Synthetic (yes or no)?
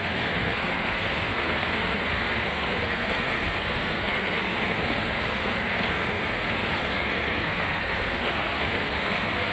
yes